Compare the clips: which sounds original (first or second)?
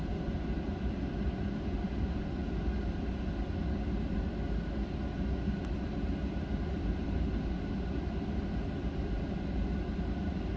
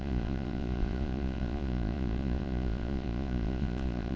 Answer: first